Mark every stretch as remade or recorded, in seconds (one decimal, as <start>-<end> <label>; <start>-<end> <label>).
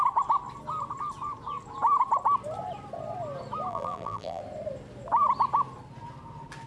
0.0-3.7 recorded; 3.7-4.4 remade; 4.4-6.7 recorded